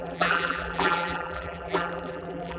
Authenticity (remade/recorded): remade